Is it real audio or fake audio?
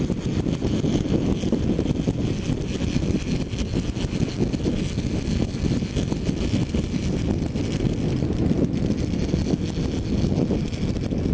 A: real